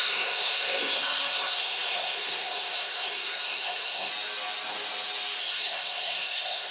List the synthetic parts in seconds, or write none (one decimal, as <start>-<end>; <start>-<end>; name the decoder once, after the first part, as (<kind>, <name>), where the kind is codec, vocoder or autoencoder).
0.0-4.1 (codec, SNAC); 5.4-6.7